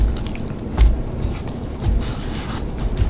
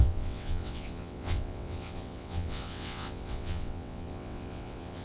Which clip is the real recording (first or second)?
first